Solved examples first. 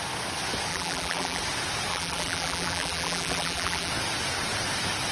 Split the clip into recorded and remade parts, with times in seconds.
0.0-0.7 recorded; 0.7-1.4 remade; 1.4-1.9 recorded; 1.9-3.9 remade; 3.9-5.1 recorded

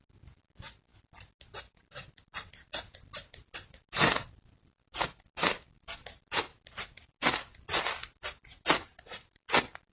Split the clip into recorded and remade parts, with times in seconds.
0.0-9.9 recorded

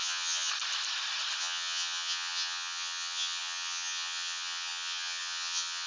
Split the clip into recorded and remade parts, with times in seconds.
0.0-0.5 remade; 0.5-1.4 recorded; 1.4-5.9 remade

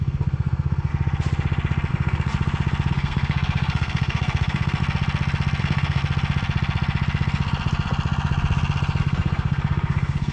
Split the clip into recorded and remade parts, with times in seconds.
0.0-0.9 remade; 0.9-1.9 recorded; 1.9-2.3 remade; 2.3-2.9 recorded; 2.9-4.8 remade; 4.8-5.6 recorded; 5.6-6.0 remade; 6.0-9.0 recorded; 9.0-10.3 remade

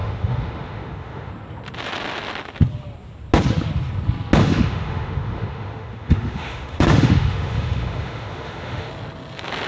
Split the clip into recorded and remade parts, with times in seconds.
0.0-1.3 remade; 1.3-4.4 recorded; 4.4-8.9 remade; 8.9-9.7 recorded

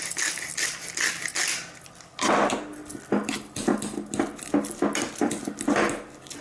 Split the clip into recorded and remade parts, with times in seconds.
0.0-6.4 recorded